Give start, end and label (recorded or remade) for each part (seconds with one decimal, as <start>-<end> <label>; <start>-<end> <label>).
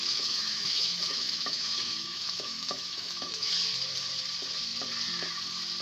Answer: 0.0-3.5 remade; 3.5-5.8 recorded